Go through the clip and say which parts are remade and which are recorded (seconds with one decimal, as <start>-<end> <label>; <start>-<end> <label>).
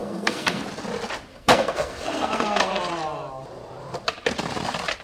0.0-0.6 remade; 0.6-1.3 recorded; 1.3-2.9 remade; 2.9-5.0 recorded